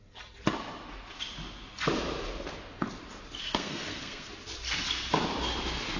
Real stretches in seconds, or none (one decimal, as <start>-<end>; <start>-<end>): 0.0-3.4; 4.3-6.0